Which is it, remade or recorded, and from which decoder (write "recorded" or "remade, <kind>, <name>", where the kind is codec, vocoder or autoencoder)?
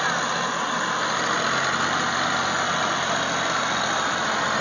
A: recorded